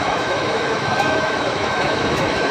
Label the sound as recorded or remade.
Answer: remade